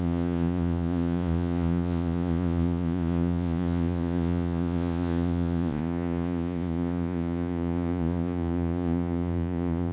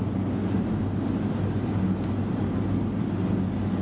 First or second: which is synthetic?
first